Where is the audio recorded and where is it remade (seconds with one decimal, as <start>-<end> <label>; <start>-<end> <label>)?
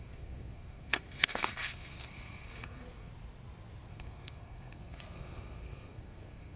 0.0-3.1 remade; 3.1-3.9 recorded; 3.9-6.6 remade